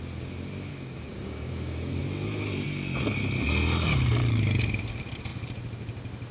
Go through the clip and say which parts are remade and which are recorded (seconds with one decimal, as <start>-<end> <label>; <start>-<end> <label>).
0.0-0.7 recorded; 0.7-2.0 remade; 2.0-4.2 recorded; 4.2-4.7 remade; 4.7-6.3 recorded